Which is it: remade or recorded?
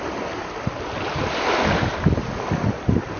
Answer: remade